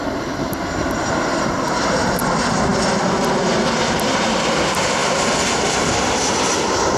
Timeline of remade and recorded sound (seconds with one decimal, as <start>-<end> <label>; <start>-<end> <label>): 0.0-2.7 recorded; 2.7-3.3 remade; 3.3-7.0 recorded